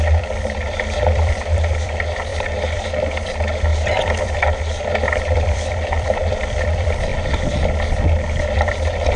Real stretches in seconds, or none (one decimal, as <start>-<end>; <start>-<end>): 7.1-8.4